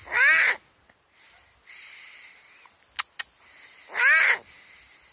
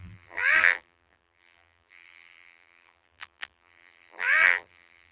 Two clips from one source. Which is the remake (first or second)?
second